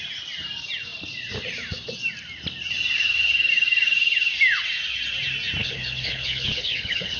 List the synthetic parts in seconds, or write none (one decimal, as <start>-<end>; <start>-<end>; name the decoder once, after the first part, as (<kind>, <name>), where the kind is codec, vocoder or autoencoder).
5.6-7.2 (codec, HILCodec)

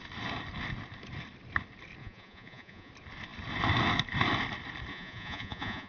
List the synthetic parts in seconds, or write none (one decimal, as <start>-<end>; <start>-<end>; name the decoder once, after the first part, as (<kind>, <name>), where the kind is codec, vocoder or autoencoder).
2.0-2.9 (vocoder, Vocos); 4.9-5.9

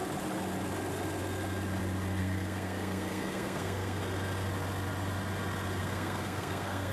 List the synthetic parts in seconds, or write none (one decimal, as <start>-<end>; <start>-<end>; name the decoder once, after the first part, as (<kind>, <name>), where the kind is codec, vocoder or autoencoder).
2.2-4.0 (codec, SNAC); 5.8-6.9

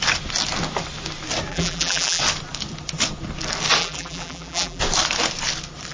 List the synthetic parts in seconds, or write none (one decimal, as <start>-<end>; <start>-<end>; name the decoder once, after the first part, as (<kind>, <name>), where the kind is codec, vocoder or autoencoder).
1.5-2.2 (vocoder, BigVGAN v2); 3.8-4.8

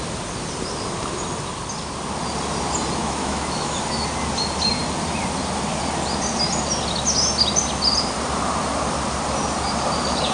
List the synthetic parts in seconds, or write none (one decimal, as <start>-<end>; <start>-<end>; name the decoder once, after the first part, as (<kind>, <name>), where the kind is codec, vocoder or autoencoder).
3.0-3.8 (autoencoder, DAC-VAE)

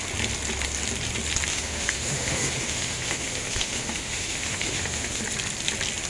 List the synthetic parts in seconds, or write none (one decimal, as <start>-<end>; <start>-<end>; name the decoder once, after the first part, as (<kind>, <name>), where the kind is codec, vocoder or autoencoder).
1.5-5.2 (autoencoder, DAC-VAE)